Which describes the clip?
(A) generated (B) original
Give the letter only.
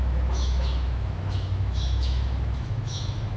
A